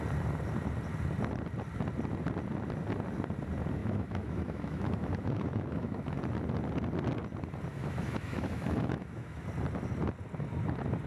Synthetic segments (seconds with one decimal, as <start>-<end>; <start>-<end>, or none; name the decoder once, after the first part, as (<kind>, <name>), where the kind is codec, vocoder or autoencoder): 3.8-6.2 (autoencoder, DAC-VAE); 7.7-9.4